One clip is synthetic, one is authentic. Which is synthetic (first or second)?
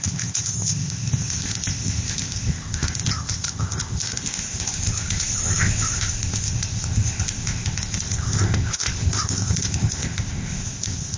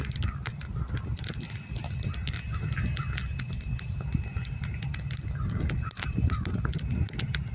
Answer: first